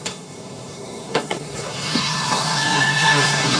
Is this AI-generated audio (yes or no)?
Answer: yes